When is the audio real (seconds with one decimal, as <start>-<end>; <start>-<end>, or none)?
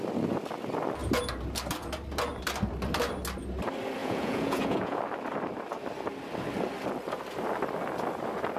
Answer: 0.0-4.0; 5.0-8.6